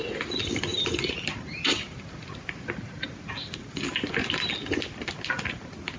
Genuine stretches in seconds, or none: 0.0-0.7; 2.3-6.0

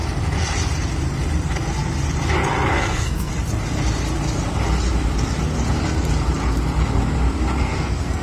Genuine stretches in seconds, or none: 0.0-2.7; 3.3-7.6

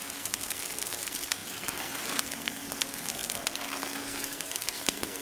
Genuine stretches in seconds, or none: none

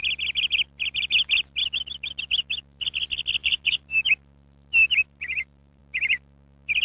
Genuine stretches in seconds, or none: 0.0-3.4; 4.1-5.0; 5.8-6.8

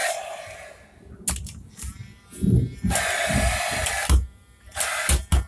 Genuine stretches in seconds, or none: 0.0-5.5